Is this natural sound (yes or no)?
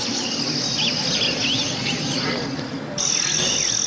yes